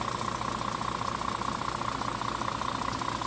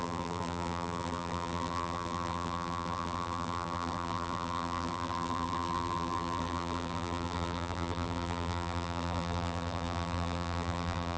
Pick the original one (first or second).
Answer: first